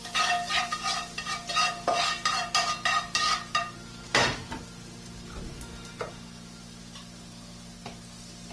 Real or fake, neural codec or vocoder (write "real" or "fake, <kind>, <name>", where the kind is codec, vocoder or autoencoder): real